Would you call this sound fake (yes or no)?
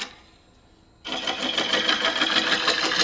no